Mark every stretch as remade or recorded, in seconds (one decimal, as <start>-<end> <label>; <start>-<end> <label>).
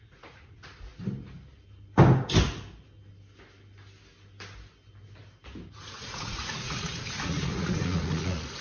0.0-0.9 remade; 0.9-5.7 recorded; 5.7-8.6 remade